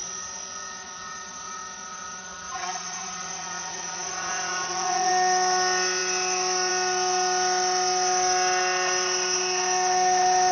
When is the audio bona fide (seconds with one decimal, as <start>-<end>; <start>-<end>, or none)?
5.1-10.5